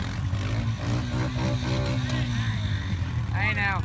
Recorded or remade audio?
recorded